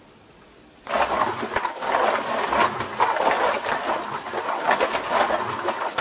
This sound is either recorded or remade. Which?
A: recorded